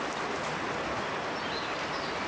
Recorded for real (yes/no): yes